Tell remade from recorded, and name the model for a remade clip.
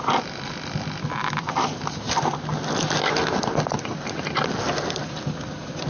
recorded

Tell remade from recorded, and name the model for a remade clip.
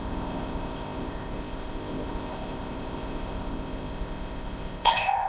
remade, codec, ZipCodec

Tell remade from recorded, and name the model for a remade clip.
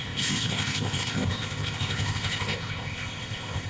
remade, codec, ZipCodec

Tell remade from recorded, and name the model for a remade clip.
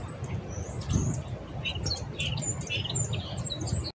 recorded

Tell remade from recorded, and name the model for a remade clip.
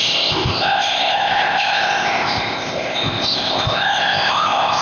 remade, codec, ZipCodec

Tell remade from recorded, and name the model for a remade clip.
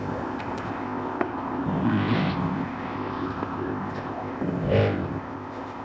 remade, codec, ZipCodec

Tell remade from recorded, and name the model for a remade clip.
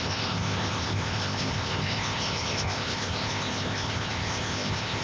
remade, codec, ZipCodec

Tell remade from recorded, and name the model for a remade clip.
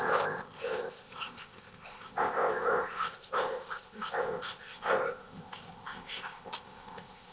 remade, codec, ZipCodec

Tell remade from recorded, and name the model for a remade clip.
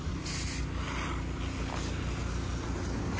recorded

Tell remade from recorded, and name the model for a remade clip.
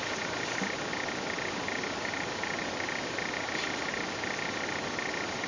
recorded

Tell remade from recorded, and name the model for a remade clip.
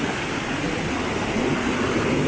recorded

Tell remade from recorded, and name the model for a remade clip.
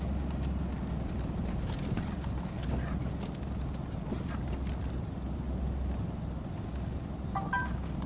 recorded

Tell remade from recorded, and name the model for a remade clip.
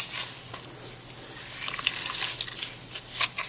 recorded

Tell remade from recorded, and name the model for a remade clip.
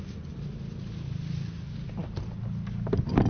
recorded